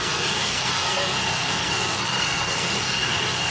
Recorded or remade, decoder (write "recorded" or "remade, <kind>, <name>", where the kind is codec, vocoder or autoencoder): remade, codec, SNAC